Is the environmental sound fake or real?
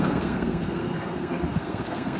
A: fake